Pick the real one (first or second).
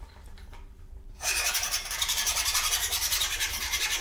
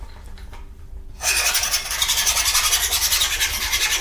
second